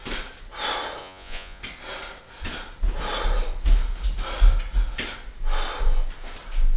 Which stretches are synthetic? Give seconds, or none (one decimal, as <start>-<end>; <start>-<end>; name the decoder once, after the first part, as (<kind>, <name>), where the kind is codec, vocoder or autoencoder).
1.0-1.6 (vocoder, Vocos)